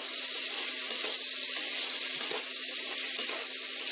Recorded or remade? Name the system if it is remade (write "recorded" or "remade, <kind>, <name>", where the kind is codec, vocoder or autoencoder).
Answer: recorded